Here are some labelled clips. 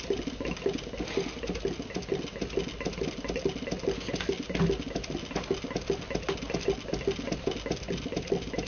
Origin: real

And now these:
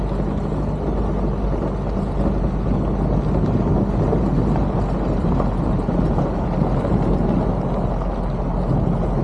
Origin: real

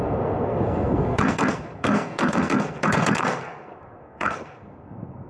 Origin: fake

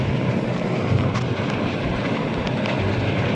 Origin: real